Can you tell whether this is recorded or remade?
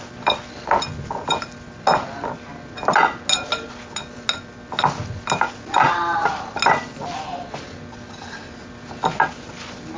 recorded